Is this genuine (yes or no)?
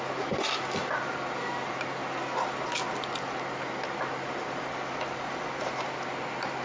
yes